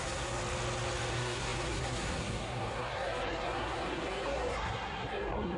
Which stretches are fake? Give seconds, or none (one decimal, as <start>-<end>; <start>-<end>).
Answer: 0.0-0.4; 1.1-5.6